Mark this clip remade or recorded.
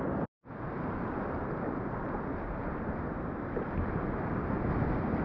recorded